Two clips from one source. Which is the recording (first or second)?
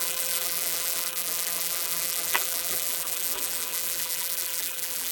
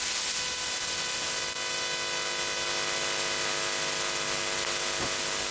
second